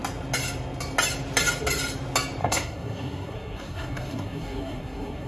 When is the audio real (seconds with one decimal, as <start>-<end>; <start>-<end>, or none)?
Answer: 0.0-2.4

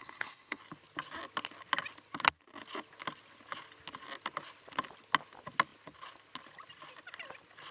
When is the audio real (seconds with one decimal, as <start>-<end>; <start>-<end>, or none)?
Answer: 0.6-7.7

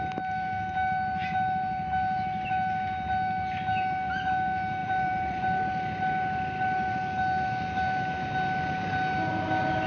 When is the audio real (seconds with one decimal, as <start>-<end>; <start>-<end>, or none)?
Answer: 0.0-4.8; 5.4-9.9

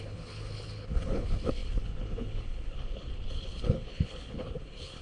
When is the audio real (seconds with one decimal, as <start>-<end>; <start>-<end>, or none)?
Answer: none

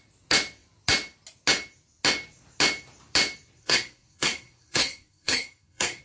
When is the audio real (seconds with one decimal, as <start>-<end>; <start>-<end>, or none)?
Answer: 0.0-3.6